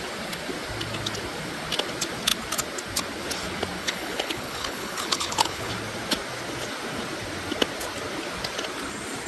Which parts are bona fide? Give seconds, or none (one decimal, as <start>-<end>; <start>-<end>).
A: 0.0-3.8; 5.7-9.3